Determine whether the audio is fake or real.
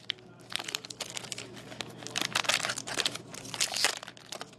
real